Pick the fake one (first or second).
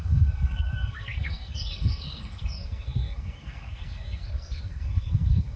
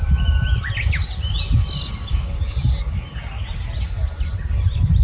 first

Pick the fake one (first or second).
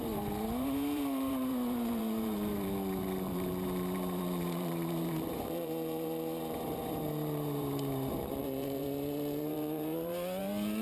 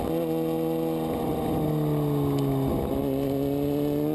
first